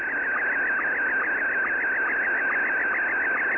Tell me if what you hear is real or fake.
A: real